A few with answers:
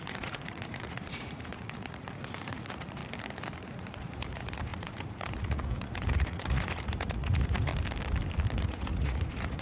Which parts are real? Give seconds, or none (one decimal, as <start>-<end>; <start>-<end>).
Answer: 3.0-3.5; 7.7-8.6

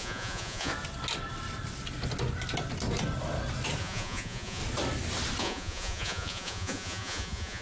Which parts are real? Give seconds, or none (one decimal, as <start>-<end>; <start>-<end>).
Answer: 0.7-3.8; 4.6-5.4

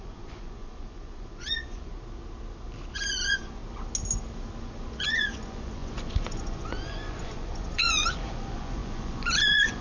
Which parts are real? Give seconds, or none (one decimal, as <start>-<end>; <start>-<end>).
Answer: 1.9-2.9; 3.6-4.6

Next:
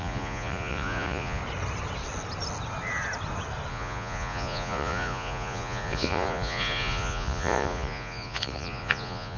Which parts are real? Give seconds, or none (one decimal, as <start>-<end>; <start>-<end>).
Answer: 1.4-3.7

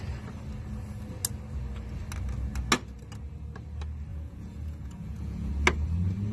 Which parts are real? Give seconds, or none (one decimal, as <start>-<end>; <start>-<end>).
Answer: 0.0-4.1; 5.5-6.3